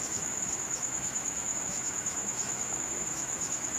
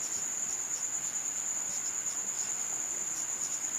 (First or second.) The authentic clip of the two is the second